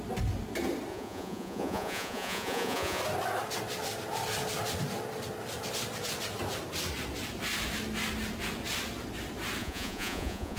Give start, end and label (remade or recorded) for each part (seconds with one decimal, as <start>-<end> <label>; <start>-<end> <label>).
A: 0.0-0.9 recorded; 0.9-3.0 remade; 3.0-9.6 recorded; 9.6-10.6 remade